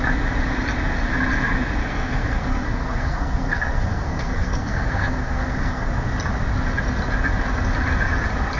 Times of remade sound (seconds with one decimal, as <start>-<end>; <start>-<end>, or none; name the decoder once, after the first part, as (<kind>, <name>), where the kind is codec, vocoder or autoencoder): 1.8-5.9 (codec, SNAC)